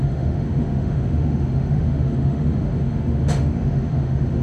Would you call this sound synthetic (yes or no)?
yes